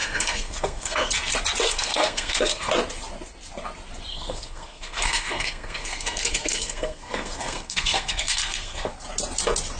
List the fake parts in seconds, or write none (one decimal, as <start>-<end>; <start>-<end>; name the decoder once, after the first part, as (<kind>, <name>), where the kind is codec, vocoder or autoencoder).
0.0-1.1 (codec, SNAC); 1.7-2.7; 4.1-8.9